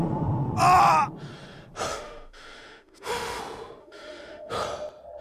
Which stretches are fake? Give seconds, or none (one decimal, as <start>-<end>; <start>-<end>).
1.9-3.4; 3.8-4.5